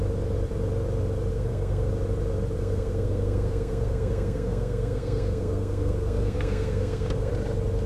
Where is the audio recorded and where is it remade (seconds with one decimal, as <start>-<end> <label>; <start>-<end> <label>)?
0.0-1.3 recorded; 1.3-1.9 remade; 1.9-2.6 recorded; 2.6-7.3 remade; 7.3-7.9 recorded